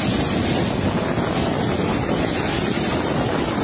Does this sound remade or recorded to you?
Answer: recorded